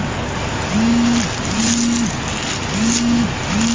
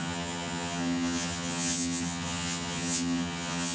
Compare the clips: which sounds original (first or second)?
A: first